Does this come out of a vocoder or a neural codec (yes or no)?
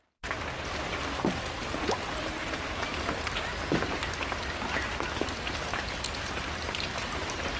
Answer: no